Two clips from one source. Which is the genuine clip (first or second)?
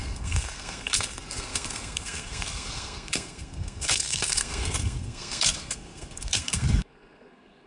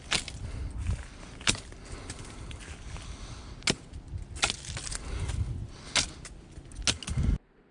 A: second